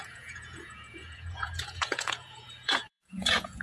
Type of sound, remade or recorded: remade